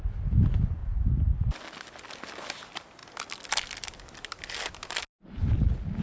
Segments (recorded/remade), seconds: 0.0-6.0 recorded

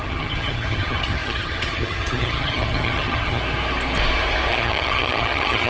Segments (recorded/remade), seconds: 0.0-3.4 remade; 3.4-4.5 recorded; 4.5-5.7 remade

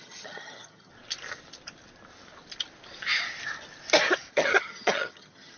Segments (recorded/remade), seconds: 0.0-0.9 remade; 0.9-4.3 recorded; 4.3-5.6 remade

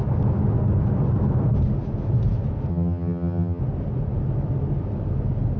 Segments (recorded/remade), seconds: 0.0-2.7 recorded; 2.7-3.6 remade; 3.6-5.6 recorded

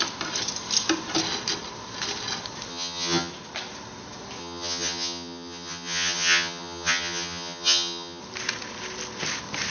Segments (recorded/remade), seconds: 0.0-2.7 recorded; 2.7-3.3 remade; 3.3-4.4 recorded; 4.4-8.2 remade; 8.2-9.7 recorded

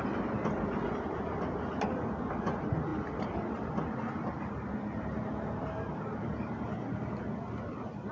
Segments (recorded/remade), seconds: 0.0-8.1 recorded

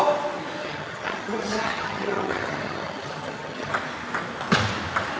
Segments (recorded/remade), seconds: 0.0-0.6 recorded; 0.6-3.7 remade; 3.7-5.2 recorded

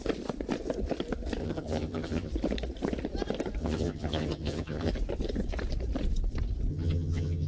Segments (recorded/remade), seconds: 0.0-1.4 recorded; 1.4-2.3 remade; 2.3-3.6 recorded; 3.6-4.9 remade; 4.9-6.7 recorded; 6.7-7.5 remade